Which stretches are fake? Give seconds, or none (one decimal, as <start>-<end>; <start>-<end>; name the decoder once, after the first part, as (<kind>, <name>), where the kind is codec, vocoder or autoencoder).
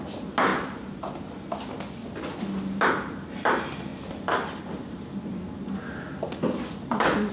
none